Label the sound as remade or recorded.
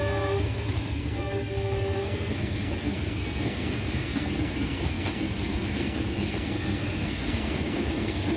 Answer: remade